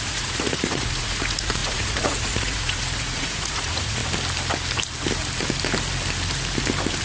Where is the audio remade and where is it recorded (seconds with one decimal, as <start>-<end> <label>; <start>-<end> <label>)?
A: 0.0-4.0 remade; 4.0-7.0 recorded